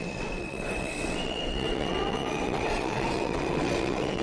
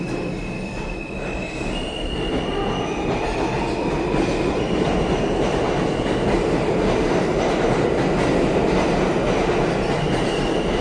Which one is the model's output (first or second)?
first